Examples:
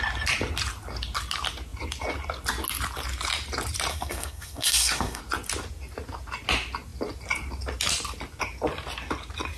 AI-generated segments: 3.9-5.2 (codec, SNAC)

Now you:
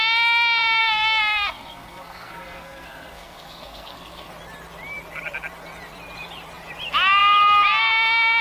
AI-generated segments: 0.8-4.3 (codec, SNAC)

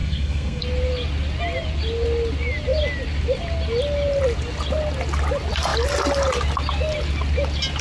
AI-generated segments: 0.0-0.6 (codec, SNAC)

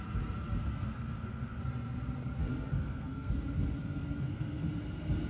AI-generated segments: 0.6-1.6 (codec, SNAC); 2.4-3.3; 3.8-4.7